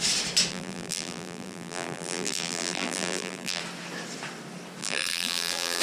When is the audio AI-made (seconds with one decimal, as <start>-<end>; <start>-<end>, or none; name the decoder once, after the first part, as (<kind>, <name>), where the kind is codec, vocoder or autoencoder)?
0.5-3.6 (vocoder, BigVGAN v2); 4.8-5.8